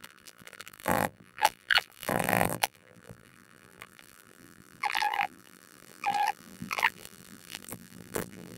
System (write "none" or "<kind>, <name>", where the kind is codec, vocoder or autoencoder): vocoder, BigVGAN v2